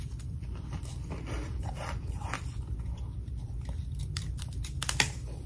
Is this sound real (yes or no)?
no